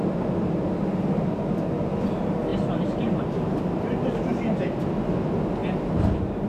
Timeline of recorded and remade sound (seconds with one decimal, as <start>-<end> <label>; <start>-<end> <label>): 0.0-6.5 recorded

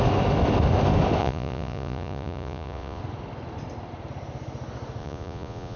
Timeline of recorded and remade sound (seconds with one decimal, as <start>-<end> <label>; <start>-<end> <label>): 0.0-1.2 recorded; 1.2-3.0 remade; 3.0-5.0 recorded; 5.0-5.8 remade